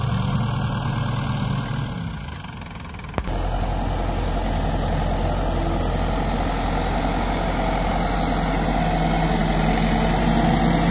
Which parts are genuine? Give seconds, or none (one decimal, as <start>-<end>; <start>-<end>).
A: 0.0-10.9